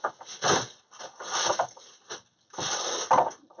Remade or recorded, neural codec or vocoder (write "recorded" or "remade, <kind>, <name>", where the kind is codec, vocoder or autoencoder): recorded